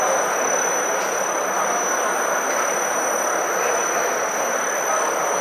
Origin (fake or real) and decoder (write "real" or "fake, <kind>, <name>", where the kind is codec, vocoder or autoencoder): real